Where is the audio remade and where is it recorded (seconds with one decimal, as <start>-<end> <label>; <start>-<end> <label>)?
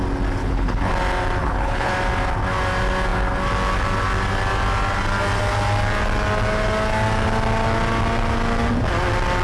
0.0-0.4 recorded; 0.4-0.9 remade; 0.9-1.4 recorded; 1.4-1.9 remade; 1.9-9.4 recorded